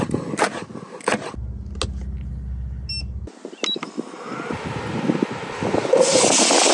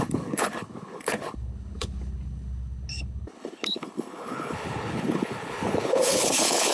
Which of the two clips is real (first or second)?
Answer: first